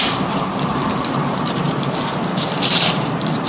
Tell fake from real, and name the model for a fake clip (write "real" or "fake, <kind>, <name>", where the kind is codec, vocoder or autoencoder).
fake, vocoder, BigVGAN v2